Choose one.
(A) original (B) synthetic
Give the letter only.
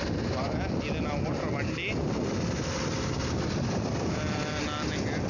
A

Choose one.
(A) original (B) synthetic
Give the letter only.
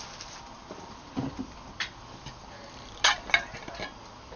A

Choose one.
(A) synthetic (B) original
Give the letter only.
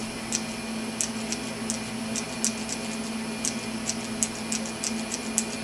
B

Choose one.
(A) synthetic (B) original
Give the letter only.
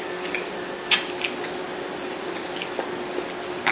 B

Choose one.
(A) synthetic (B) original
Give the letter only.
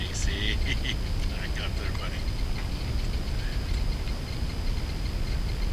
B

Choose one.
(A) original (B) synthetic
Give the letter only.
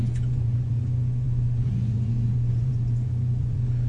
B